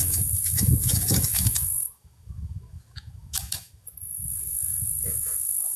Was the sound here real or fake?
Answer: fake